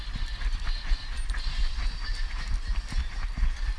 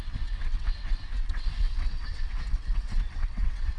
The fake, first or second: second